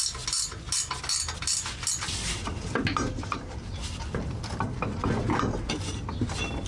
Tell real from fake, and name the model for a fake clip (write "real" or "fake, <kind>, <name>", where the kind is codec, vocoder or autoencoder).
real